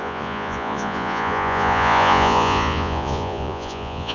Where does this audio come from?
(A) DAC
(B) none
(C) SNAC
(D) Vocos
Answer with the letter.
D